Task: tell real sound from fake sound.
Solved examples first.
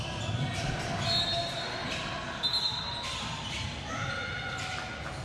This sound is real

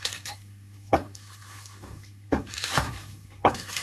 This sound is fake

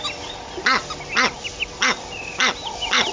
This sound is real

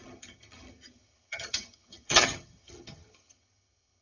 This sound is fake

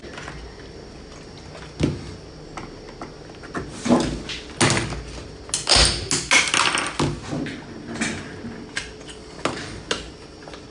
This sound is real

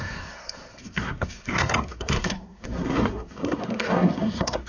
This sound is fake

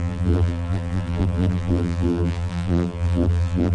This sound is fake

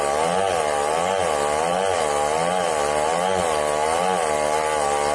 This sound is real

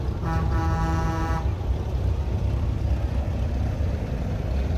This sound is real